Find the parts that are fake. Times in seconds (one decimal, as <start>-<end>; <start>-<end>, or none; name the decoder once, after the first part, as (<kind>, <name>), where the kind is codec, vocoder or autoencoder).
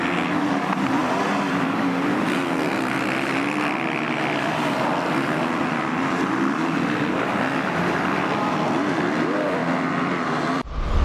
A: none